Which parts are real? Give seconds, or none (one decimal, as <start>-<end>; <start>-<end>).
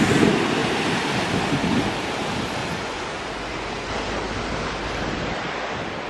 0.0-2.6; 3.9-6.1